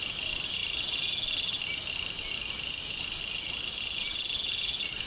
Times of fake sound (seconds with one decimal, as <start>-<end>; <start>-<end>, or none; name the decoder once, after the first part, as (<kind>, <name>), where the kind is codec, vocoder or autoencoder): none